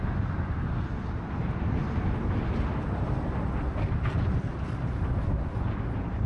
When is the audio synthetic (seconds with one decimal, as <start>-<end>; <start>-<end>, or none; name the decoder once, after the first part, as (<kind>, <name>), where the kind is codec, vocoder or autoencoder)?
none